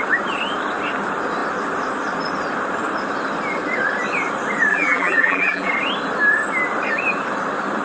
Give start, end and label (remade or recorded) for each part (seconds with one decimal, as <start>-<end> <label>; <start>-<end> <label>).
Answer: 0.0-4.7 recorded; 4.7-5.7 remade; 5.7-7.8 recorded